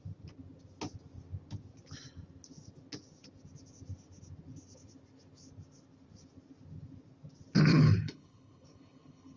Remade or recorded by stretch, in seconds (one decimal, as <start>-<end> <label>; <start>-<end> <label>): 0.0-7.7 recorded; 7.7-9.4 remade